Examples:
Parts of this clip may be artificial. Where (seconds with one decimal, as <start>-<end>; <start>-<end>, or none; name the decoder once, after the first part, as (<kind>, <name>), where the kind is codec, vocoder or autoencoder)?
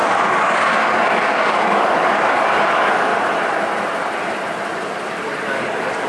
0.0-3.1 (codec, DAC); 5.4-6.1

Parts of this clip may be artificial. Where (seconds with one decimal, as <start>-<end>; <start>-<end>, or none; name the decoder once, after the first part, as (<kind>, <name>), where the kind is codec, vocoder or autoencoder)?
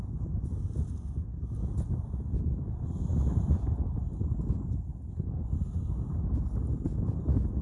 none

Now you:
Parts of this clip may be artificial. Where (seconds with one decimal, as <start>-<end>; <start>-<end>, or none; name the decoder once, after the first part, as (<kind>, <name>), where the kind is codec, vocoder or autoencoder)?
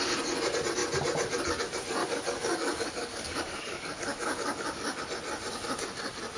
2.0-5.0 (codec, DAC)